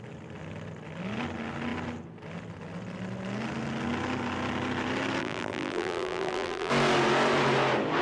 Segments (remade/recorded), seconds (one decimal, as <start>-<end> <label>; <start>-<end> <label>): 0.0-5.2 recorded; 5.2-6.7 remade; 6.7-8.0 recorded